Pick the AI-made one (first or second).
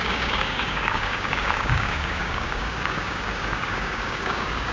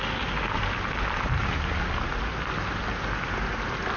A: first